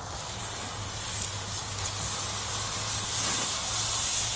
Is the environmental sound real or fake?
real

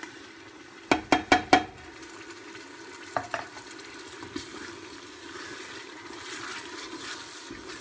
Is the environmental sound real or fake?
real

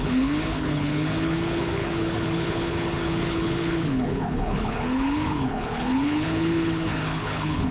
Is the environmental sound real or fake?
fake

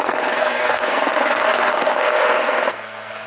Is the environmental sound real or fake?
fake